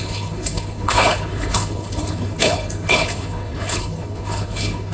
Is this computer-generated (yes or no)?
yes